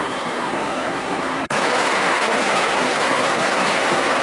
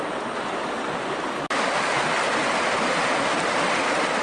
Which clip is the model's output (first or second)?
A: first